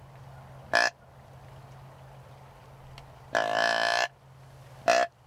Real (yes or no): yes